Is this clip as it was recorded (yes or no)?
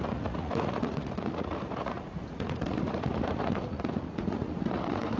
no